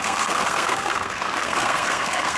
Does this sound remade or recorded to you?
remade